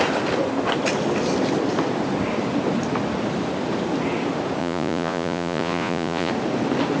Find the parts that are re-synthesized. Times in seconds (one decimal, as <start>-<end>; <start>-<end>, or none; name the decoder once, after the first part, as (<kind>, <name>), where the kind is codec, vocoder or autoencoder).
4.6-6.3 (vocoder, Vocos)